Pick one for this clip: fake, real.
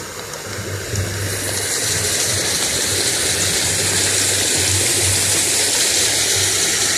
real